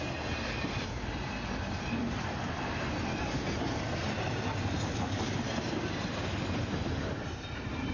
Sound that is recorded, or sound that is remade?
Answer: recorded